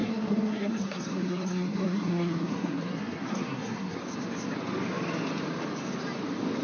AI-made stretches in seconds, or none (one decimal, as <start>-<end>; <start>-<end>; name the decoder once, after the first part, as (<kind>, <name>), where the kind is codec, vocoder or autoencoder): 0.0-4.0 (codec, SNAC)

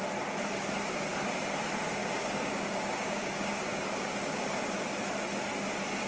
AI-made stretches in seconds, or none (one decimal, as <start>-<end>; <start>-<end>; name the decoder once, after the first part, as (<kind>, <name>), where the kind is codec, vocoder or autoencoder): 2.0-3.8 (codec, DAC)

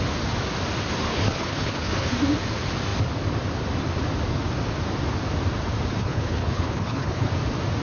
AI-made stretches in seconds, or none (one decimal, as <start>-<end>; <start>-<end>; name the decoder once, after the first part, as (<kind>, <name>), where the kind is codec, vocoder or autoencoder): 1.1-2.1 (codec, HILCodec); 6.0-7.3

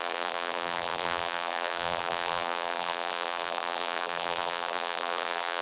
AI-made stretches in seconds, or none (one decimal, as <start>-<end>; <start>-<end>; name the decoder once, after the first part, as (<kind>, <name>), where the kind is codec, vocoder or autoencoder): 0.0-5.6 (vocoder, BigVGAN v2)

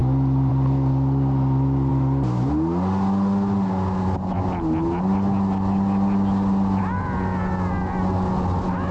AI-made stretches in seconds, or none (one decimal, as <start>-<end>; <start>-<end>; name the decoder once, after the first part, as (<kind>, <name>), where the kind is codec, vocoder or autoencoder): none